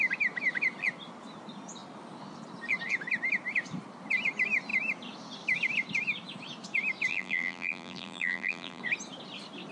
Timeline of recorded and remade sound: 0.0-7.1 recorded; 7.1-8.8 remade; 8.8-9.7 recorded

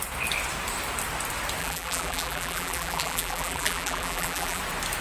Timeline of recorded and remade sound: 0.0-1.6 recorded; 1.6-4.6 remade; 4.6-5.0 recorded

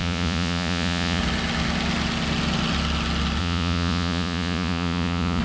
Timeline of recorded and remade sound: 0.0-1.2 remade; 1.2-3.4 recorded; 3.4-5.4 remade

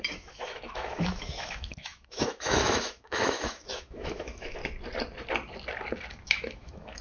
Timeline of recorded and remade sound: 0.0-4.6 remade; 4.6-6.1 recorded; 6.1-7.0 remade

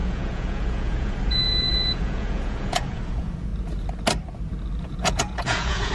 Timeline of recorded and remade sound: 0.0-3.5 remade; 3.5-4.8 recorded; 4.8-5.9 remade

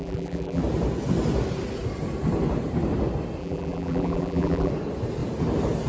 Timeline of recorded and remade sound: 0.0-0.6 remade; 0.6-3.4 recorded; 3.4-4.7 remade; 4.7-5.9 recorded

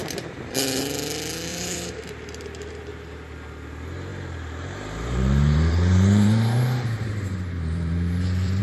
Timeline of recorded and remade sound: 0.0-1.5 recorded; 1.5-2.0 remade; 2.0-4.1 recorded; 4.1-8.6 remade

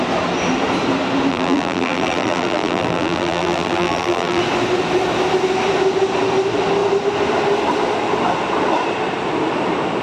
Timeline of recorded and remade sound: 0.0-1.3 recorded; 1.3-4.4 remade; 4.4-10.0 recorded